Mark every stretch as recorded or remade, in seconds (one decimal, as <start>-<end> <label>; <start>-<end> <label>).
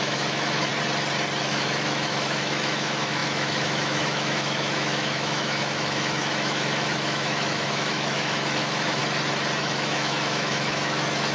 0.0-0.7 remade; 0.7-1.4 recorded; 1.4-9.0 remade; 9.0-9.6 recorded; 9.6-11.3 remade